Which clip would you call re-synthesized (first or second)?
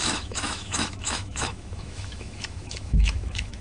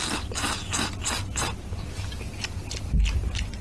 first